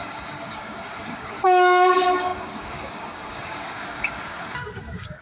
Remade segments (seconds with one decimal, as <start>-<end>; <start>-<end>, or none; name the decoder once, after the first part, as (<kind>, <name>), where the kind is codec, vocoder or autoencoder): 0.0-5.2 (codec, DAC)